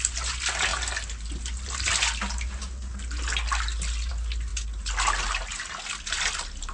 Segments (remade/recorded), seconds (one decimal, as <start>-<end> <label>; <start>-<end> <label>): 0.0-6.7 recorded